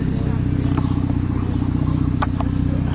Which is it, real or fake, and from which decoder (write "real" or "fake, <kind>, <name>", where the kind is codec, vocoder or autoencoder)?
real